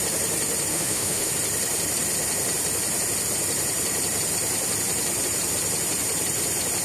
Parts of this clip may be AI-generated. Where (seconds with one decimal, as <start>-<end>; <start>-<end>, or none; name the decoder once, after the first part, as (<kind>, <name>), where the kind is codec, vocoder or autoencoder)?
0.7-1.3 (autoencoder, DAC-VAE)